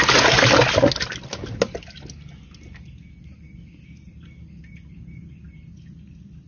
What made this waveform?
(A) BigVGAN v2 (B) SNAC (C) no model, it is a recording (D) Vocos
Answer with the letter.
C